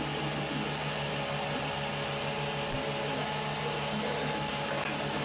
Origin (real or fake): real